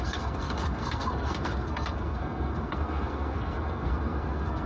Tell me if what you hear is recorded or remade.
remade